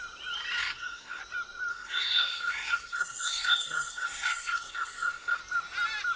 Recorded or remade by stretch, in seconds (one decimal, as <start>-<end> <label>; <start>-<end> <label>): 0.0-0.6 recorded; 0.6-1.2 remade; 1.2-1.7 recorded; 1.7-5.4 remade; 5.4-6.2 recorded